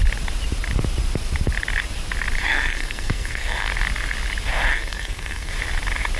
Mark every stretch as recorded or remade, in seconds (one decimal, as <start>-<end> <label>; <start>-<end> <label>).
0.0-2.4 recorded; 2.4-3.7 remade; 3.7-4.7 recorded; 4.7-5.5 remade; 5.5-6.2 recorded